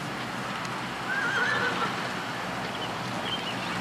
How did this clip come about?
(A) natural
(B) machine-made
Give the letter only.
A